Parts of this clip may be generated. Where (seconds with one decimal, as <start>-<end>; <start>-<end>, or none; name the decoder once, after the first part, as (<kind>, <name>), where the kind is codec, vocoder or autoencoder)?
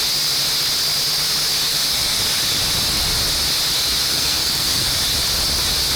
1.7-2.2 (codec, SNAC); 4.0-4.9